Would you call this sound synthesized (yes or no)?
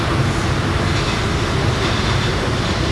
no